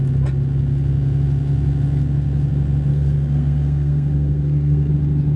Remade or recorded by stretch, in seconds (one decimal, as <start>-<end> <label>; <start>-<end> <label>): 0.0-2.9 recorded; 2.9-4.9 remade; 4.9-5.4 recorded